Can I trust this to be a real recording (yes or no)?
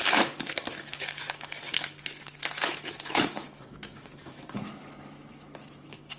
no